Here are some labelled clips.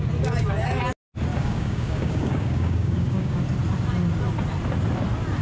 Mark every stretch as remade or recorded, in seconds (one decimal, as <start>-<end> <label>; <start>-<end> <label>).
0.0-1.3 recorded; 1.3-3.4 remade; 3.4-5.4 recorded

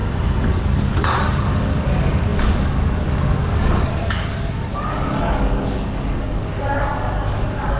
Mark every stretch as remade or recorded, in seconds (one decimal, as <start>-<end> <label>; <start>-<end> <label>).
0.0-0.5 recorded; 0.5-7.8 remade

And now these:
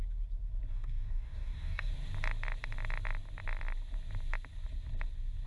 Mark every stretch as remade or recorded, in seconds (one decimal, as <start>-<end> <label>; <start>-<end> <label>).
0.0-0.7 recorded; 0.7-1.9 remade; 1.9-5.5 recorded

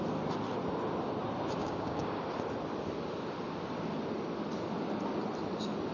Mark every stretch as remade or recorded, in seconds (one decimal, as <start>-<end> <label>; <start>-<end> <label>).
0.0-1.6 recorded; 1.6-2.2 remade; 2.2-5.9 recorded

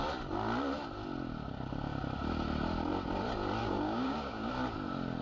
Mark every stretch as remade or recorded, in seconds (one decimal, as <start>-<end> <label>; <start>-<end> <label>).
0.0-3.6 recorded; 3.6-4.5 remade; 4.5-5.2 recorded